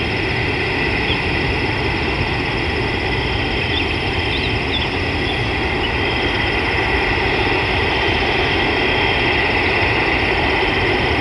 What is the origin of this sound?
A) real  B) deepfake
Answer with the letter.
A